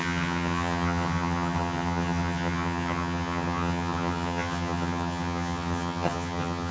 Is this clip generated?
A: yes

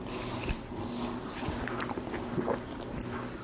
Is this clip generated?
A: no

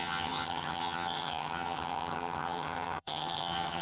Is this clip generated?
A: yes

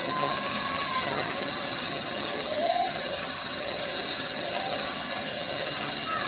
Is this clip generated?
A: yes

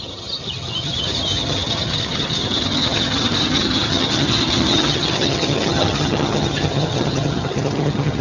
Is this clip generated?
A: yes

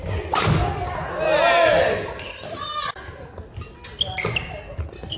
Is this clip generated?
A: no